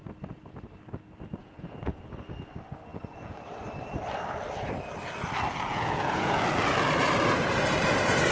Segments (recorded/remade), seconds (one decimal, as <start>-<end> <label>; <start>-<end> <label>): 0.0-1.4 recorded; 1.4-2.0 remade; 2.0-5.7 recorded; 5.7-6.4 remade; 6.4-8.3 recorded